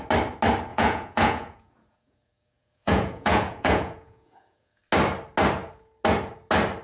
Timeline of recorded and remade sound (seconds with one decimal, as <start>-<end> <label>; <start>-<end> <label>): 0.0-0.7 recorded; 0.7-4.8 remade; 4.8-6.8 recorded